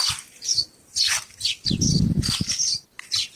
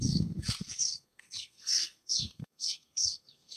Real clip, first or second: first